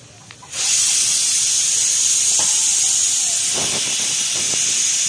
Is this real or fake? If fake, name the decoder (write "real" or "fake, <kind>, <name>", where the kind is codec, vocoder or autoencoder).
real